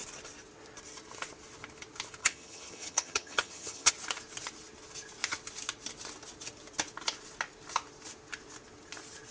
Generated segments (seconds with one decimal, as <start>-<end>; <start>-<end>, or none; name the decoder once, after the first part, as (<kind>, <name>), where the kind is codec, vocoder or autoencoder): 2.2-3.9 (vocoder, HiFi-GAN)